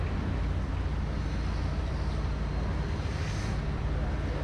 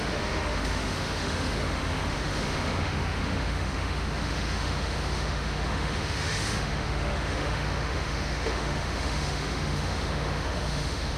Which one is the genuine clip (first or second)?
first